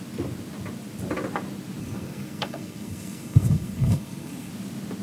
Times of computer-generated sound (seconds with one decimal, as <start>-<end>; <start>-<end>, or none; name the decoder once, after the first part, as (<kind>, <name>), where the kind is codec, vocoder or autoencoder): 1.8-4.5 (codec, SNAC)